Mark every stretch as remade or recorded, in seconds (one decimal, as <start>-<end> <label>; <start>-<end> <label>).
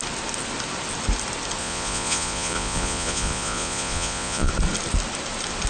0.0-1.6 recorded; 1.6-4.5 remade; 4.5-5.7 recorded